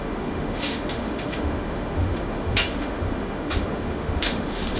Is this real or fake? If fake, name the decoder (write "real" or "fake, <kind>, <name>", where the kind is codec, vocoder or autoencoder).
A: fake, autoencoder, DAC-VAE